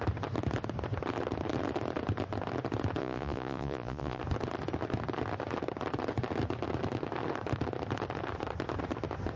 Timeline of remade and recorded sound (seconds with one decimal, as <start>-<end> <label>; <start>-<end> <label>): 0.0-3.0 recorded; 3.0-4.2 remade; 4.2-9.4 recorded